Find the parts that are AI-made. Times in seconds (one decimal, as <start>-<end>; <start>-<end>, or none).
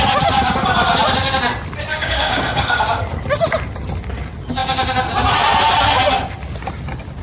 1.9-2.8